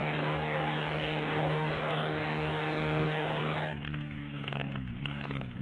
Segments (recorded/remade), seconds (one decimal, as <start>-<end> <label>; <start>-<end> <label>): 0.0-5.6 remade